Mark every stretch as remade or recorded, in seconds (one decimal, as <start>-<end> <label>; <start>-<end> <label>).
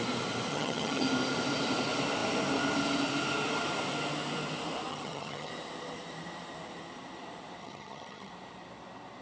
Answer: 0.0-0.5 recorded; 0.5-1.1 remade; 1.1-4.9 recorded; 4.9-5.5 remade; 5.5-7.6 recorded; 7.6-8.3 remade; 8.3-9.2 recorded